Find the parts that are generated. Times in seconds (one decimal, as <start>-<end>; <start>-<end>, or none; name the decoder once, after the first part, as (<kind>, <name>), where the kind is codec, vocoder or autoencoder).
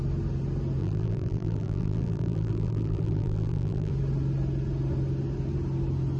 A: 0.8-3.9 (vocoder, BigVGAN v2)